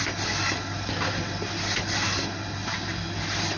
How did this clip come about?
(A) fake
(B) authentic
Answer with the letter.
B